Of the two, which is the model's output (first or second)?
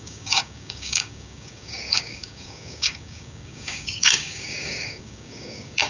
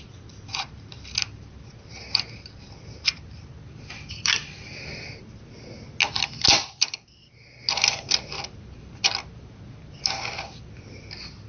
first